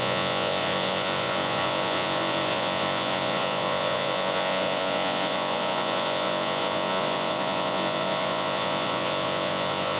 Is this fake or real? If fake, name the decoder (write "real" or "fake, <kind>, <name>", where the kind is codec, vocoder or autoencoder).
fake, vocoder, Vocos